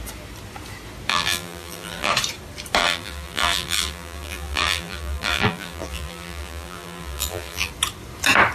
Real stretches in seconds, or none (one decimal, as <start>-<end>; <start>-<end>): 0.0-1.1; 2.1-2.8; 7.7-8.5